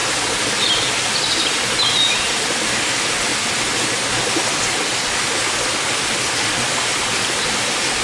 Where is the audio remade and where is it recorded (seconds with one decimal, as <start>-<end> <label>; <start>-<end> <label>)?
0.0-8.0 recorded